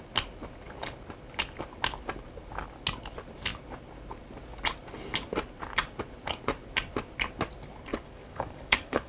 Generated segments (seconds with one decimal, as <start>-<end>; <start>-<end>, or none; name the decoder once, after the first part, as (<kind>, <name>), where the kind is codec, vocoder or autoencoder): 7.9-9.1 (codec, DAC)